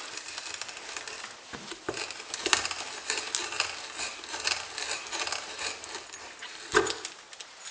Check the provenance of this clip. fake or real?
real